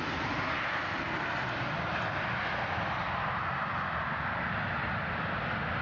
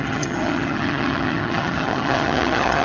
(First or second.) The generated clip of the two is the second